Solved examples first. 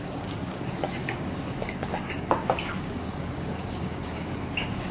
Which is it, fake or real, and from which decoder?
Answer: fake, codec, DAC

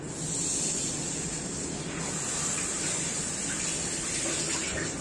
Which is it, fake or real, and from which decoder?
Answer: real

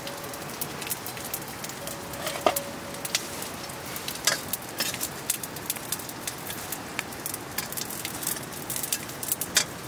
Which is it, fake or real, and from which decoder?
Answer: real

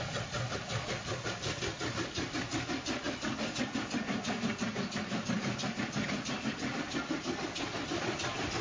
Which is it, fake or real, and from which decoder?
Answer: real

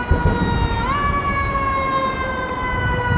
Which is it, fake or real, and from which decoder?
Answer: real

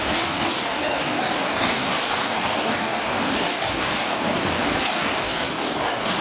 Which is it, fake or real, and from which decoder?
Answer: fake, codec, DAC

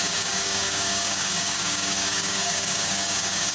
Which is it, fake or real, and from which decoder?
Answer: fake, codec, DAC